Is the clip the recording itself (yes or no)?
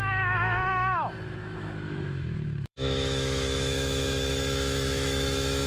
no